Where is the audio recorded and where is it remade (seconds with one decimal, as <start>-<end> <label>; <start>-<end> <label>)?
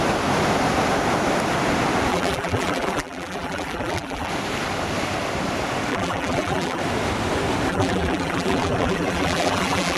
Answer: 0.0-2.1 recorded; 2.1-4.3 remade; 4.3-5.9 recorded; 5.9-6.8 remade; 6.8-7.7 recorded; 7.7-10.0 remade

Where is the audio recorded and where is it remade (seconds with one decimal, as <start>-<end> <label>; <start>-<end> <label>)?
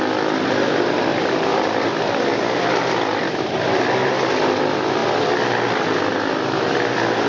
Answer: 0.0-3.1 recorded; 3.1-4.1 remade; 4.1-7.3 recorded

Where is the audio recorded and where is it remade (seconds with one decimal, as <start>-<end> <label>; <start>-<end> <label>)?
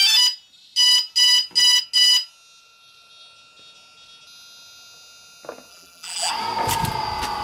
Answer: 0.0-5.7 recorded; 5.7-6.3 remade; 6.3-7.4 recorded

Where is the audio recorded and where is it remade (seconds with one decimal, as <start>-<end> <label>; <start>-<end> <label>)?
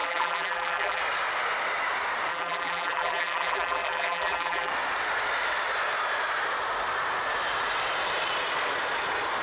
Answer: 0.0-1.0 remade; 1.0-2.3 recorded; 2.3-4.7 remade; 4.7-9.4 recorded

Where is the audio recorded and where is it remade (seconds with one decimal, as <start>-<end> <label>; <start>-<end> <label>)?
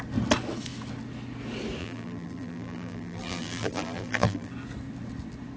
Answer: 0.0-1.8 recorded; 1.8-4.5 remade; 4.5-5.6 recorded